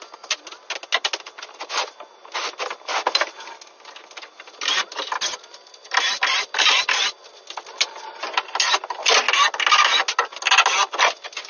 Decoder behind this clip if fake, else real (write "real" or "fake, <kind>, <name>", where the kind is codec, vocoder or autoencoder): real